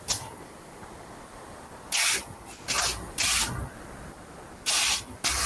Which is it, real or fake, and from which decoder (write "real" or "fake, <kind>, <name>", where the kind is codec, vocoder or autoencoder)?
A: real